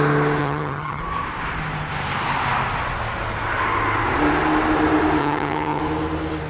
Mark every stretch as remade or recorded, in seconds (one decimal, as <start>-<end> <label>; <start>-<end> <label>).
0.0-0.4 recorded; 0.4-1.0 remade; 1.0-5.2 recorded; 5.2-5.8 remade; 5.8-6.5 recorded